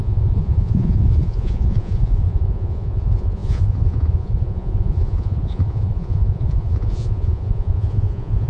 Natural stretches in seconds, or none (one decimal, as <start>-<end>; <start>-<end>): none